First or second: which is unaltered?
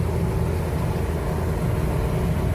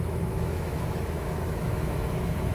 first